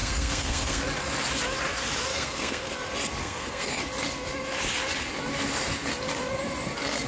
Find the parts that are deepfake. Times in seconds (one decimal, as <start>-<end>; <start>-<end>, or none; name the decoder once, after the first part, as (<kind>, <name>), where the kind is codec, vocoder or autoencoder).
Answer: 0.0-0.8 (codec, SNAC); 2.1-2.7; 3.2-3.8